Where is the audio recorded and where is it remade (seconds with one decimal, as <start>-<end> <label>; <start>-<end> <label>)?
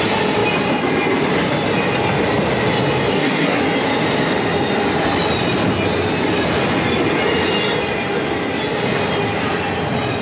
0.0-3.1 recorded; 3.1-3.6 remade; 3.6-10.2 recorded